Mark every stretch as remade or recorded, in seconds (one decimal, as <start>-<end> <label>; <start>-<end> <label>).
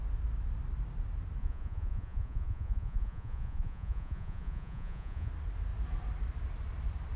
0.0-1.4 recorded; 1.4-5.3 remade; 5.3-7.2 recorded